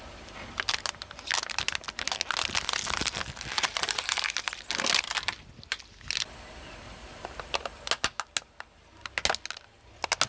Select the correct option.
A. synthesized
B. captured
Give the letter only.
B